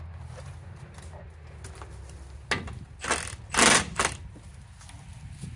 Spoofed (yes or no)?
no